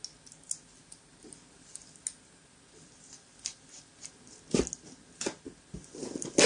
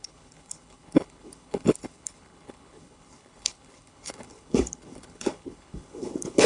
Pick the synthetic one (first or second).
second